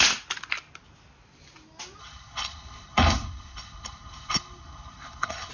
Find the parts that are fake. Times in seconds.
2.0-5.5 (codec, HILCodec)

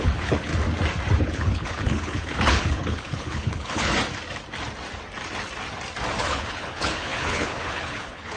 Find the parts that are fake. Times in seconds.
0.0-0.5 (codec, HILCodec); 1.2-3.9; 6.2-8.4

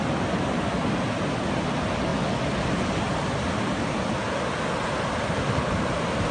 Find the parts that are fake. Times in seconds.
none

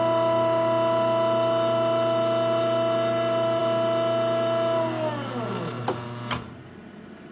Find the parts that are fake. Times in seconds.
none

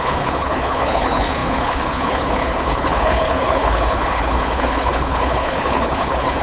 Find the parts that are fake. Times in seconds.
0.0-6.4 (codec, HILCodec)

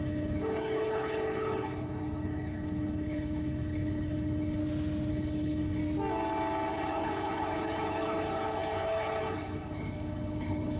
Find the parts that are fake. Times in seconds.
0.0-4.6 (codec, HILCodec); 5.1-5.8; 6.7-10.8